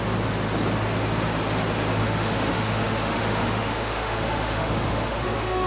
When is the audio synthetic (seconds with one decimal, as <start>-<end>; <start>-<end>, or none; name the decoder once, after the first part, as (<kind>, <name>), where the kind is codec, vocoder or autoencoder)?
2.0-5.7 (autoencoder, DAC-VAE)